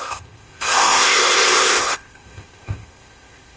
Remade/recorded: remade